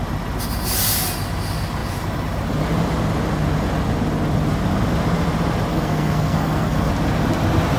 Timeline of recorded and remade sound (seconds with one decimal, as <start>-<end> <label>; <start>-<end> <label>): 0.0-5.7 recorded; 5.7-6.9 remade; 6.9-7.8 recorded